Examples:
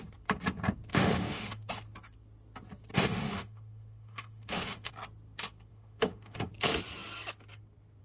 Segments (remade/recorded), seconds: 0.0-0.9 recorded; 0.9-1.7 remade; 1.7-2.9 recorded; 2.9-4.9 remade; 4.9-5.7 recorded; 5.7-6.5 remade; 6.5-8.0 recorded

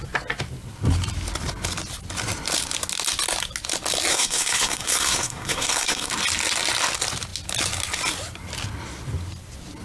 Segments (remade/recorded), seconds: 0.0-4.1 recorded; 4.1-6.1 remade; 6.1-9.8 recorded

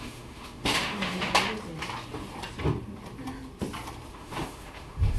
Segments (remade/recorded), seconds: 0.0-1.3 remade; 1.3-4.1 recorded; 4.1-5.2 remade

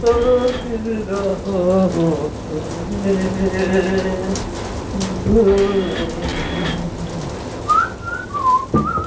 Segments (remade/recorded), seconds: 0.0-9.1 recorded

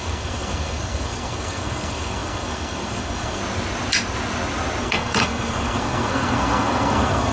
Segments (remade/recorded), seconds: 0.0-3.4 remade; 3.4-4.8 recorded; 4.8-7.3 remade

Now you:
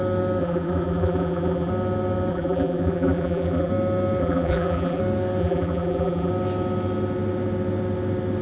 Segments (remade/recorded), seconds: 0.0-0.4 recorded; 0.4-1.7 remade; 1.7-2.3 recorded; 2.3-3.7 remade; 3.7-4.2 recorded; 4.2-5.0 remade; 5.0-5.4 recorded; 5.4-6.3 remade; 6.3-8.4 recorded

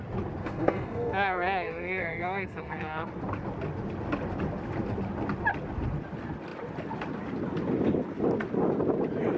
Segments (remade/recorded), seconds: 0.0-0.4 recorded; 0.4-3.1 remade; 3.1-9.4 recorded